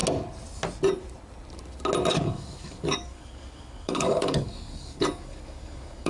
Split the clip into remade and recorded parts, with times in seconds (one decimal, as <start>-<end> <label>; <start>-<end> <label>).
0.0-2.1 recorded; 2.1-6.1 remade